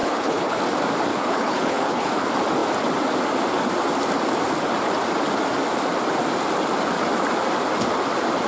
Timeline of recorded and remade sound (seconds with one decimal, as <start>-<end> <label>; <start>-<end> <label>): 0.0-0.6 remade; 0.6-1.1 recorded; 1.1-2.1 remade; 2.1-8.5 recorded